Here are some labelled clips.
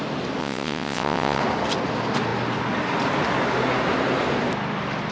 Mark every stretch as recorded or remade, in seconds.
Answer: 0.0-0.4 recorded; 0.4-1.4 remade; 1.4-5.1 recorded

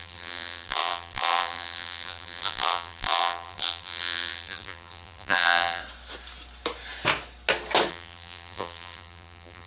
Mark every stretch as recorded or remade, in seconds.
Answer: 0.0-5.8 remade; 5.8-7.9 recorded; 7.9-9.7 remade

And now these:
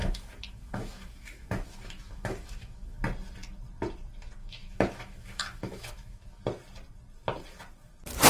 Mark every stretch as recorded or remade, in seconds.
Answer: 0.0-3.0 remade; 3.0-4.4 recorded; 4.4-6.4 remade; 6.4-8.3 recorded

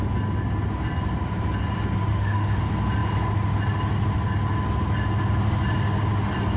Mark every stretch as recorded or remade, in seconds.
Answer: 0.0-2.1 recorded; 2.1-2.6 remade; 2.6-6.6 recorded

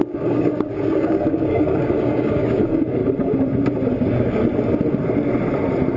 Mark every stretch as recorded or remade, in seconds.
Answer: 0.0-3.0 remade; 3.0-3.9 recorded; 3.9-4.4 remade; 4.4-6.0 recorded